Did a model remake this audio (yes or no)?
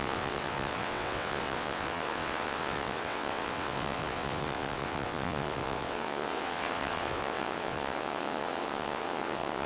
yes